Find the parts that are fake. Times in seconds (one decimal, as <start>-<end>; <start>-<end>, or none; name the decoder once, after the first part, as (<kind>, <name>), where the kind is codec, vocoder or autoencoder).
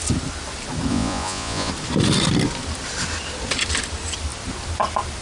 0.9-1.7 (vocoder, Vocos)